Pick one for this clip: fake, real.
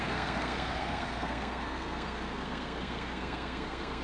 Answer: fake